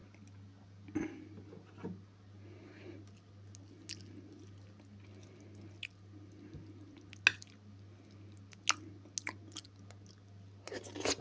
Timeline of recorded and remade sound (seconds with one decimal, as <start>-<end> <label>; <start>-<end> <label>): 0.0-11.2 recorded